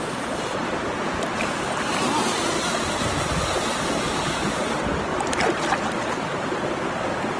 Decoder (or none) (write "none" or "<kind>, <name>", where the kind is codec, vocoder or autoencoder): none